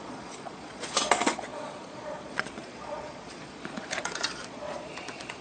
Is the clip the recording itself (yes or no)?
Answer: no